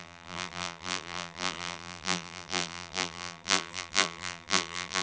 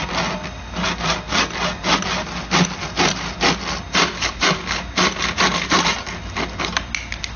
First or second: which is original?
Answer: second